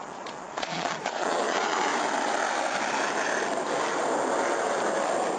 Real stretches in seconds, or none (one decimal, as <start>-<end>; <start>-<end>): 1.9-5.4